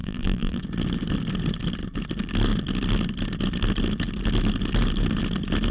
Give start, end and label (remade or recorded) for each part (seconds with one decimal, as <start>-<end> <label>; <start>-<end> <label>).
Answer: 0.0-0.6 remade; 0.6-5.7 recorded